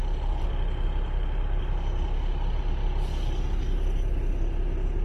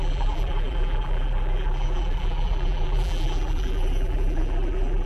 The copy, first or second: second